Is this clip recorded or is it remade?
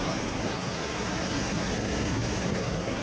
remade